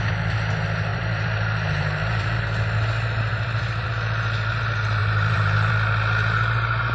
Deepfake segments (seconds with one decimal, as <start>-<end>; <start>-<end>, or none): 0.9-2.4; 3.3-3.9; 5.0-5.7